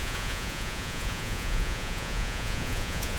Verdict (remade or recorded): remade